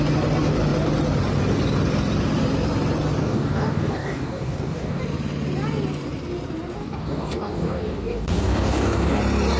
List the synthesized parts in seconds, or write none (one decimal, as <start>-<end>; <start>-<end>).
3.2-5.0; 6.8-9.2